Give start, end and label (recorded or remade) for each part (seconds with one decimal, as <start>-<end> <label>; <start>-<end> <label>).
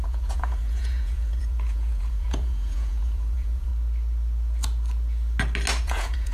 0.0-3.7 remade; 3.7-5.8 recorded; 5.8-6.3 remade